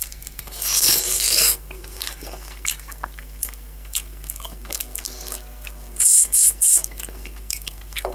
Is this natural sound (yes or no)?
no